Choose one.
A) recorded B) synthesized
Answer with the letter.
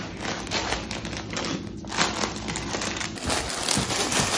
A